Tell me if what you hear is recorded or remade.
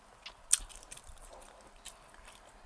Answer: recorded